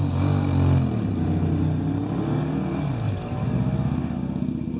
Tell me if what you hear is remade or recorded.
recorded